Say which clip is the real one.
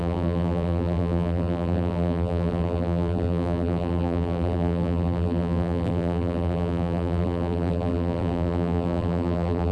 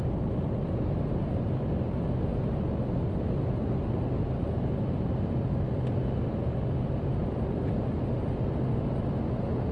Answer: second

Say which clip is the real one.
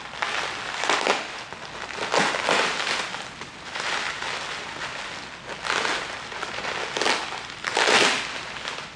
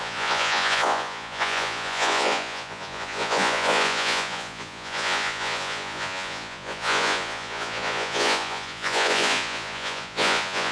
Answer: first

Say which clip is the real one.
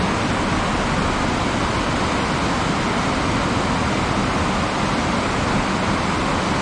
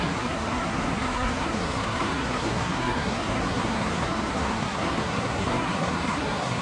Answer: first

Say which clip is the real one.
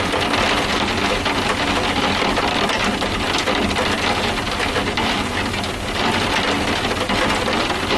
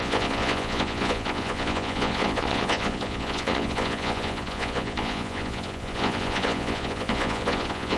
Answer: first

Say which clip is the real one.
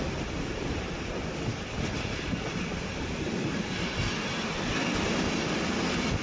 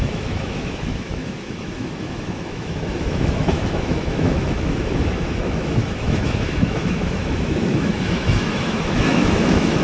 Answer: first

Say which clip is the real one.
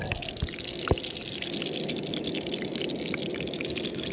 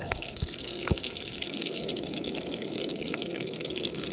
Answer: first